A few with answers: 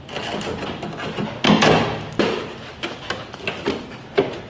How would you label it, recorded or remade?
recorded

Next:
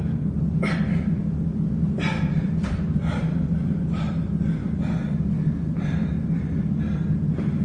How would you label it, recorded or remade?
recorded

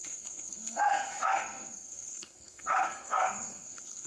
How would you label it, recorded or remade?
remade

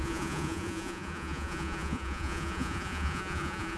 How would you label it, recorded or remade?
remade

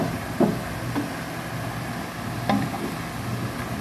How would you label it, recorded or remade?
recorded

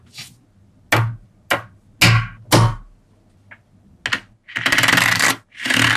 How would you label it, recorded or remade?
recorded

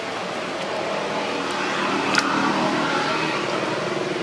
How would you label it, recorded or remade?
recorded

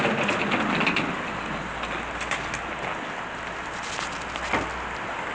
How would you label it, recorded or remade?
recorded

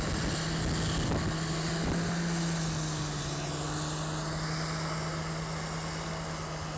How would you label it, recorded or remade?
recorded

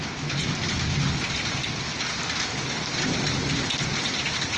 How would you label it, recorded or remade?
recorded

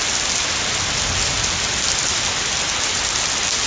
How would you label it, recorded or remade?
recorded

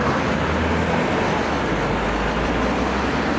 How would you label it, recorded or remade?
recorded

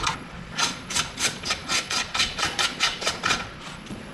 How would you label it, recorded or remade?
remade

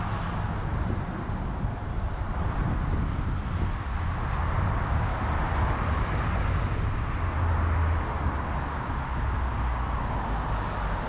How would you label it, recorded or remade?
recorded